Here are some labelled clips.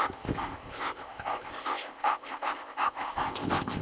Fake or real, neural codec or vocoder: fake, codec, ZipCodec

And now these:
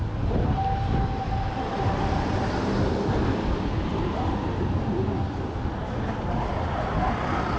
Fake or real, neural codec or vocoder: real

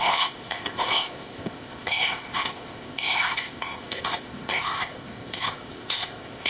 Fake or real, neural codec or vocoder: fake, codec, ZipCodec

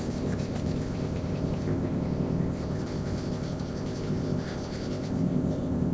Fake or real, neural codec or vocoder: fake, codec, ZipCodec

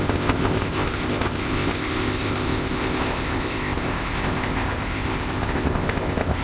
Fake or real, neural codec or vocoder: fake, codec, ZipCodec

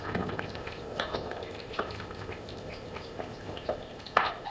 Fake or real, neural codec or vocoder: fake, codec, ZipCodec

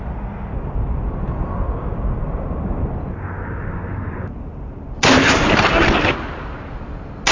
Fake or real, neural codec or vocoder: real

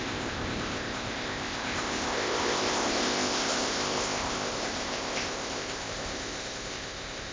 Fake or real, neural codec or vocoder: fake, codec, ZipCodec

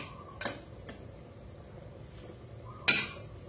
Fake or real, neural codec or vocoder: real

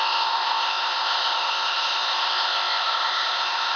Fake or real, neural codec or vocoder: fake, codec, ZipCodec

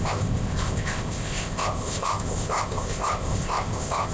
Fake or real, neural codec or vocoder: fake, codec, ZipCodec